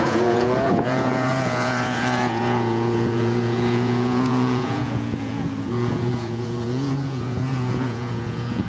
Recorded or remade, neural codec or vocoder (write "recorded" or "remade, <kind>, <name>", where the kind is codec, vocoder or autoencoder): remade, vocoder, Vocos